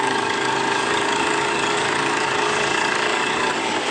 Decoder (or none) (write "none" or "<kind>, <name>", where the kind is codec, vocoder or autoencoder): codec, DAC